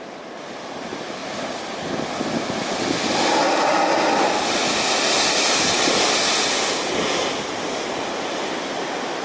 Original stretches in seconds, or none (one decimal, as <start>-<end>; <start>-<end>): 0.0-9.2